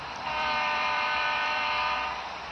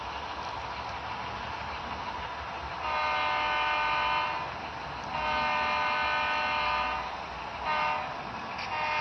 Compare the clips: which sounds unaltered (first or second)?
second